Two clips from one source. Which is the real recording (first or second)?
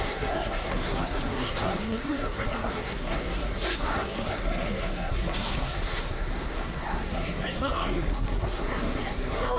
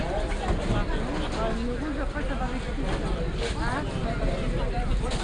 second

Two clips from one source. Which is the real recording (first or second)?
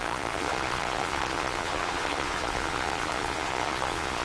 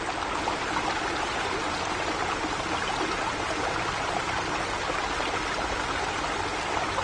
second